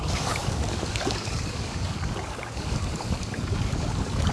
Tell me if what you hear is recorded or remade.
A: remade